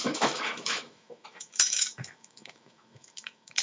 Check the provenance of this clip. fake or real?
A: fake